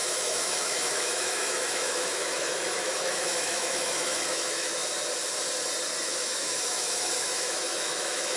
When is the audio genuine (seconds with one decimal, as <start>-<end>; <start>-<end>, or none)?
4.8-6.0